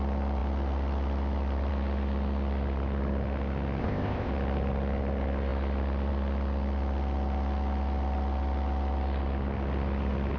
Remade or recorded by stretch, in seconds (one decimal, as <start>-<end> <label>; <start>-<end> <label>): 0.0-3.8 recorded; 3.8-4.3 remade; 4.3-10.4 recorded

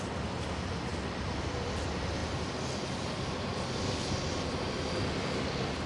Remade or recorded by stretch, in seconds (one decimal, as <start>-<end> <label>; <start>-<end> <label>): 0.0-5.9 recorded

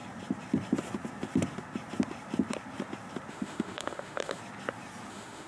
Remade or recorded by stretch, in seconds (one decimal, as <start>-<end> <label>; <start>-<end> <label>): 0.0-3.3 recorded; 3.3-4.4 remade; 4.4-5.1 recorded; 5.1-5.5 remade

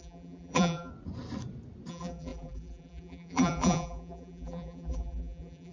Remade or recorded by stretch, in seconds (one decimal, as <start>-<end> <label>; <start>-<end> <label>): 0.0-0.9 remade; 0.9-1.9 recorded; 1.9-5.7 remade

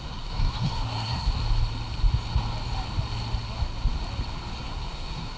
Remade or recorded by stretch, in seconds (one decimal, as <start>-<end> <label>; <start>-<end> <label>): 0.0-1.4 remade; 1.4-4.6 recorded; 4.6-5.4 remade

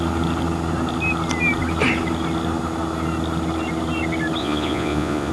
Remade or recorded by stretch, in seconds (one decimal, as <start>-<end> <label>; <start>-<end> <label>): 0.0-4.4 recorded; 4.4-5.3 remade

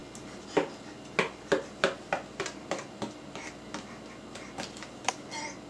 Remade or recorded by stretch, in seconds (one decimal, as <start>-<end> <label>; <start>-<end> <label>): 0.0-5.7 recorded

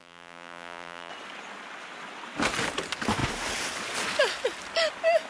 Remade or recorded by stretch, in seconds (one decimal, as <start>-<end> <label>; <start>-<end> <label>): 0.0-1.1 remade; 1.1-5.3 recorded